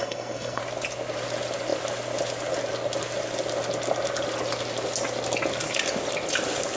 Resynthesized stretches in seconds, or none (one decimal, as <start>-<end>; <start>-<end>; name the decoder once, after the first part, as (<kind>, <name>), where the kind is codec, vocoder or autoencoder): 0.0-0.6 (codec, SNAC)